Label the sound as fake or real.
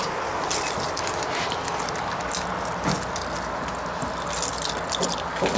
real